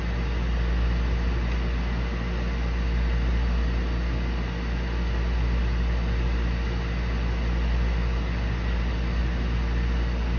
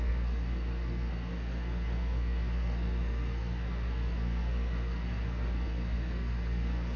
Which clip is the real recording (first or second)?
first